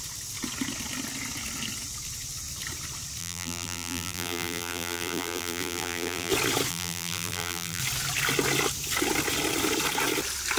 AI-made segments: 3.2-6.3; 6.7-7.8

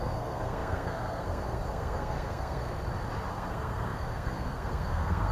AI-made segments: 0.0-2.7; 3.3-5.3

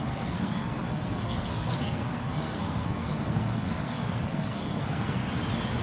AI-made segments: 0.0-5.2

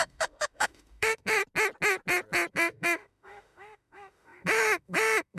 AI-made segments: 0.0-1.4; 2.5-5.4

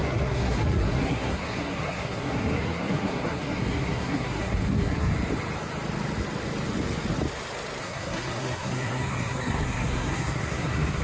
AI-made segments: 0.0-5.1; 7.8-11.0

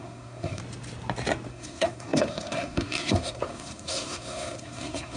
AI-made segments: 0.0-0.6; 1.5-5.2